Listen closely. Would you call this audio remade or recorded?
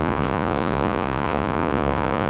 remade